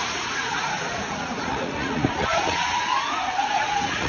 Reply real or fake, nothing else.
fake